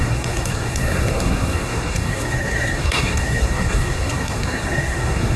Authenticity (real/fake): fake